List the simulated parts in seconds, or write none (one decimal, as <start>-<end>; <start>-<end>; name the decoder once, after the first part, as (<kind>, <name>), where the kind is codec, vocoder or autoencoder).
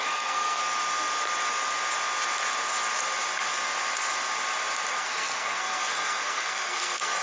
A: 0.0-0.6 (codec, SNAC); 4.9-7.2